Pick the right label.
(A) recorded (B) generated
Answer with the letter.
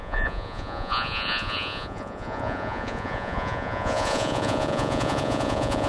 B